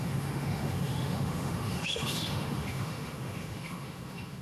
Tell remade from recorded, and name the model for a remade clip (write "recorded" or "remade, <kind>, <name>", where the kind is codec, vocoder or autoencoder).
remade, autoencoder, DAC-VAE